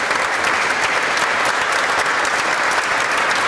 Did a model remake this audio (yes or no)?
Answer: no